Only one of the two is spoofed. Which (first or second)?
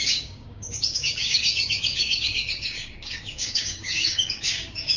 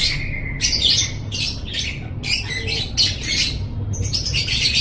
first